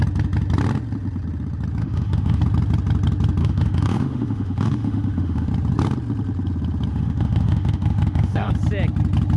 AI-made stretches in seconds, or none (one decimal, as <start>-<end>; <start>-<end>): 1.8-2.4; 3.4-5.5; 6.9-8.5